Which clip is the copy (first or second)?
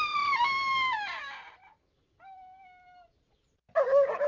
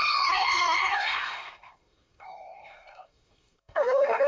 second